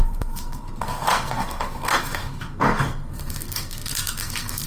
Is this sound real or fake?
fake